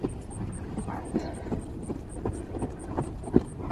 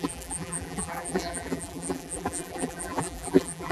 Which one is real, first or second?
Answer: first